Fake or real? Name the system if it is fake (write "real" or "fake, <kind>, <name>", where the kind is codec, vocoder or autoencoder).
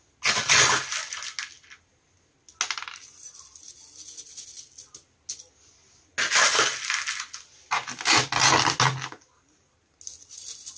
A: real